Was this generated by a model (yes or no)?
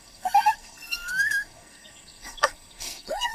yes